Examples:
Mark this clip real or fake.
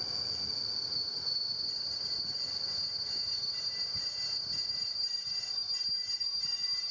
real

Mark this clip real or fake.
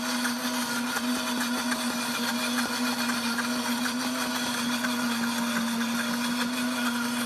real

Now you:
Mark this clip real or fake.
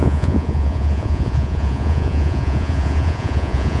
fake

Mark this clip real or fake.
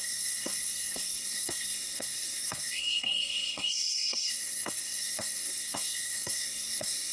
fake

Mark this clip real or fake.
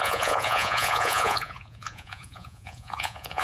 fake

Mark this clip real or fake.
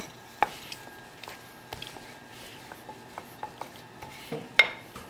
real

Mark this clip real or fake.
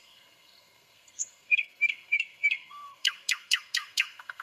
fake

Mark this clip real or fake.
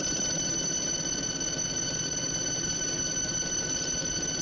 real